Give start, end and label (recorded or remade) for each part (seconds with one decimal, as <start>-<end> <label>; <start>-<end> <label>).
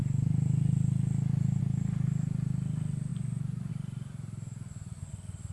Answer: 0.0-3.1 recorded; 3.1-3.7 remade; 3.7-5.5 recorded